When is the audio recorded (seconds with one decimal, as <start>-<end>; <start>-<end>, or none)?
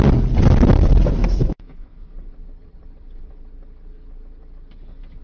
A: 0.0-1.2; 2.0-5.2